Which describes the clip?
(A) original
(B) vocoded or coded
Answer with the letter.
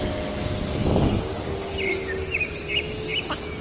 A